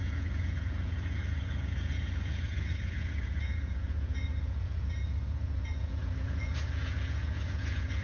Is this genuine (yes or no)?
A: no